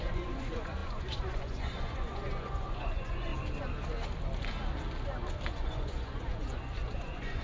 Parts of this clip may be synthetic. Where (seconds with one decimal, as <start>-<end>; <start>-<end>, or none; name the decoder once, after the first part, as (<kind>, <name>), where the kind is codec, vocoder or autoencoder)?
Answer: 0.0-3.3 (vocoder, Vocos); 5.5-7.4